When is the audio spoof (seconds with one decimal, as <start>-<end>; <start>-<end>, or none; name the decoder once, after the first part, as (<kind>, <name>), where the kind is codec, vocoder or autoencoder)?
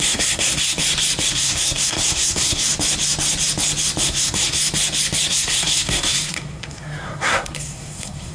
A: 0.0-0.8 (codec, SNAC); 1.3-2.7; 4.0-4.6; 5.3-8.3